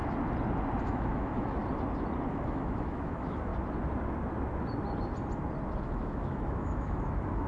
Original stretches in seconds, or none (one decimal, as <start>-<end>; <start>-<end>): 0.0-0.8; 1.6-2.3; 3.5-5.8